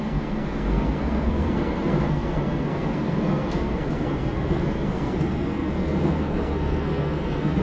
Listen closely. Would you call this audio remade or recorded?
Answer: remade